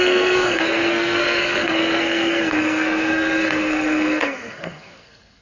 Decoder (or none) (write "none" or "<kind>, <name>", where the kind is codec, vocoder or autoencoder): codec, SNAC